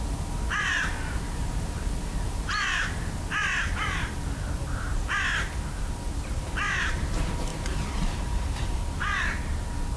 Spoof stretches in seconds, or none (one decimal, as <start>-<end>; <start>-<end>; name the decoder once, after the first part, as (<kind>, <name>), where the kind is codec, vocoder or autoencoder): 0.9-3.2 (vocoder, BigVGAN v2); 7.5-9.2